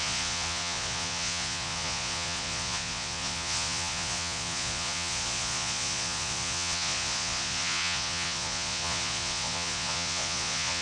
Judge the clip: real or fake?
fake